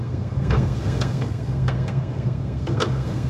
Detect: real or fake fake